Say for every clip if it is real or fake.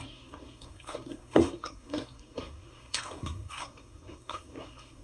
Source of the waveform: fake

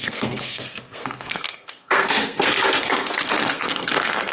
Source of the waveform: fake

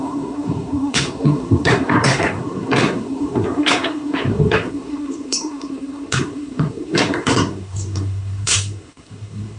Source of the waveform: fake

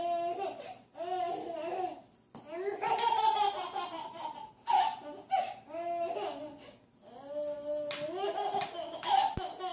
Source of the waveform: real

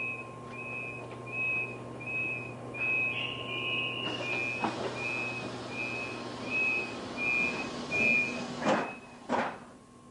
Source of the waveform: real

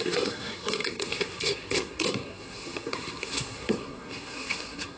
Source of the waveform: fake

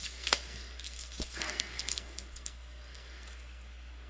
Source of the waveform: fake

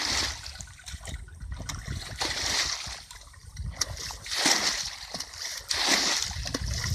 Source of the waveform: real